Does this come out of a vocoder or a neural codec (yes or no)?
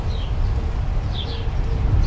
no